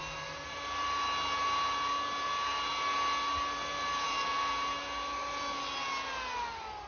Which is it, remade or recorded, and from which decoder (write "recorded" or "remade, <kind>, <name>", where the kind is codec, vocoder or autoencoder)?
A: recorded